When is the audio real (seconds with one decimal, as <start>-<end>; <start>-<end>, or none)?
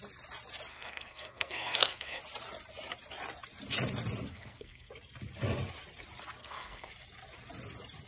0.0-0.7; 2.2-4.3; 4.9-6.4; 6.9-8.1